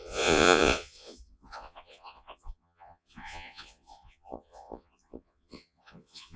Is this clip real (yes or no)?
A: no